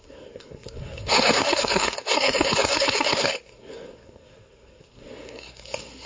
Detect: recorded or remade remade